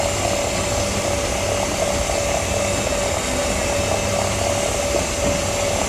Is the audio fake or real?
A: real